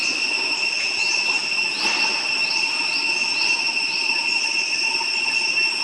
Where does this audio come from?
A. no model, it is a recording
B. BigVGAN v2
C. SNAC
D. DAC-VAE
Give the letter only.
A